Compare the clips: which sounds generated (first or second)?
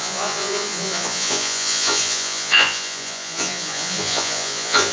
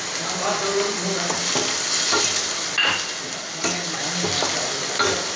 first